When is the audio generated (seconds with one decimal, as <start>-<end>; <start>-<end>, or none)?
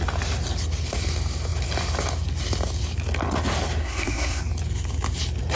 3.8-4.4